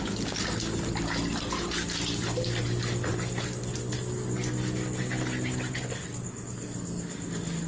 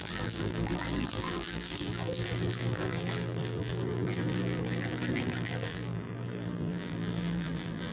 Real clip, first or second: first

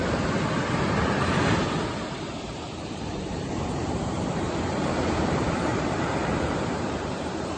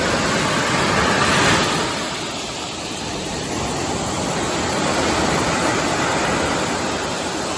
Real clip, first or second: second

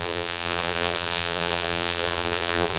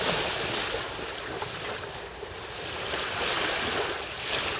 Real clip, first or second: second